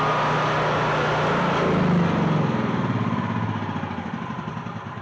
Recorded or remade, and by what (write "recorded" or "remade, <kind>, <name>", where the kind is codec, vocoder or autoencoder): recorded